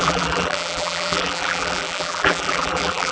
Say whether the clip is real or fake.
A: fake